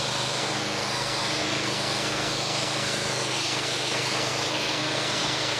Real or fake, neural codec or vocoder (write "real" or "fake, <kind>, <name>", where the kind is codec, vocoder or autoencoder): fake, codec, SNAC